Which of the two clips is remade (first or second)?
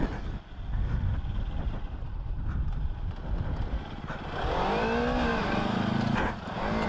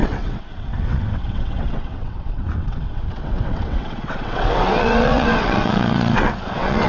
second